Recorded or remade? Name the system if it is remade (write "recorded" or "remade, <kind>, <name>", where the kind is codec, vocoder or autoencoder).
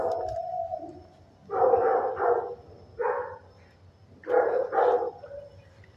recorded